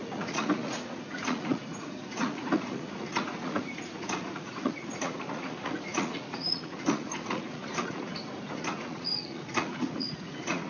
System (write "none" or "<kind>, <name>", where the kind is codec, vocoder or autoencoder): vocoder, Vocos